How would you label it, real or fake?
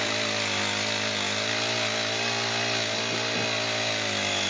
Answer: real